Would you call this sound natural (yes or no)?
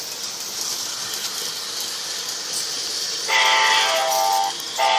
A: yes